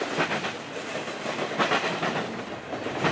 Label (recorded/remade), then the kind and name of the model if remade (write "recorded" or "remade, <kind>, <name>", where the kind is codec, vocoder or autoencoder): recorded